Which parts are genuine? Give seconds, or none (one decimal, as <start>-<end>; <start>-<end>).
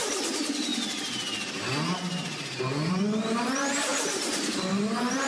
0.7-2.9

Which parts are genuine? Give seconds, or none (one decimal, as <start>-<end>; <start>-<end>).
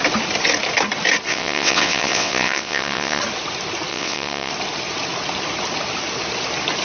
0.0-1.3; 3.2-3.9; 4.5-6.8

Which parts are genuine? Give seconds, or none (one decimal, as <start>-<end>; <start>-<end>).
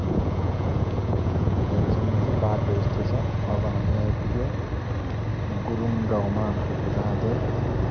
3.7-7.9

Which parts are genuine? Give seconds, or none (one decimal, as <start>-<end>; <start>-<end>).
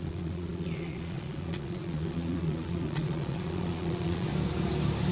4.3-5.1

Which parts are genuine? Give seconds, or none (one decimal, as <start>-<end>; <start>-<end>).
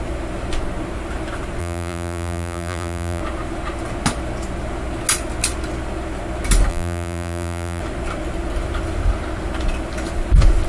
0.0-1.6; 3.2-6.7; 7.8-10.7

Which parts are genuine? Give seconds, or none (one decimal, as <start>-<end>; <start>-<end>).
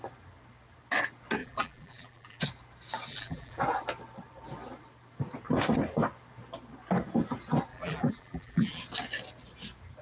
0.0-1.4; 2.4-3.1; 3.6-7.7; 8.8-10.0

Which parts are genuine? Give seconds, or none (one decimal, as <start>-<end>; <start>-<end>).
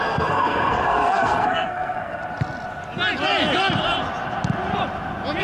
2.2-5.4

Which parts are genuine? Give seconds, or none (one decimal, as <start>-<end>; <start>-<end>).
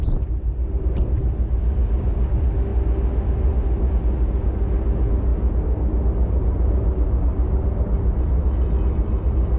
0.0-9.6